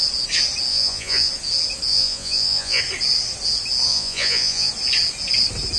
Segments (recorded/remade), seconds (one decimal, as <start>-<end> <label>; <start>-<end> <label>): 0.0-0.7 recorded; 0.7-1.3 remade; 1.3-1.9 recorded; 1.9-2.8 remade; 2.8-3.9 recorded; 3.9-4.7 remade; 4.7-5.8 recorded